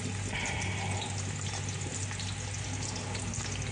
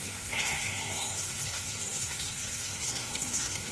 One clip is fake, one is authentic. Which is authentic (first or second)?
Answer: first